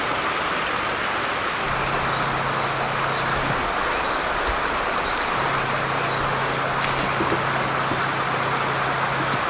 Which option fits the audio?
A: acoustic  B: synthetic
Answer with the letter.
A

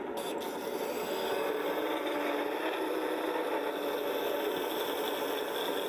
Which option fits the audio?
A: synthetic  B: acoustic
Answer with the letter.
B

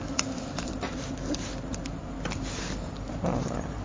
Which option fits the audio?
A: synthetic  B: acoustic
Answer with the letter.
B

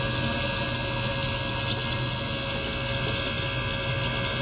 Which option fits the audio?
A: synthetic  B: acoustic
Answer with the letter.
B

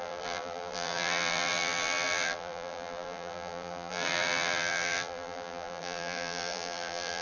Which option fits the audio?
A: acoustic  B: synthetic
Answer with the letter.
B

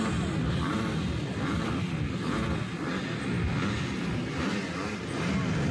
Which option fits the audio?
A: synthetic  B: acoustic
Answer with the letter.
B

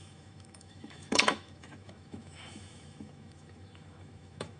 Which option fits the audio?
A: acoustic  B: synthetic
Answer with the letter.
B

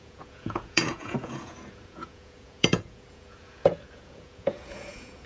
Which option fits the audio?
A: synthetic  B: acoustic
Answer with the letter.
A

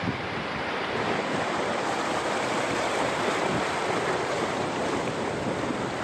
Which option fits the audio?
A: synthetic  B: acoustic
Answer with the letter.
A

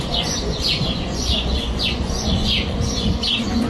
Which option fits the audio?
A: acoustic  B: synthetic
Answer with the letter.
B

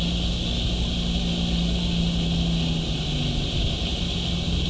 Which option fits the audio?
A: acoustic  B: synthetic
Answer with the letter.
A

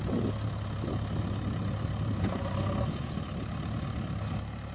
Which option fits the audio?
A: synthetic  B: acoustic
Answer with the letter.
B